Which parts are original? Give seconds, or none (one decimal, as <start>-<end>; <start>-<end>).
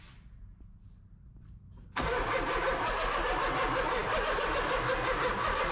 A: 0.0-5.7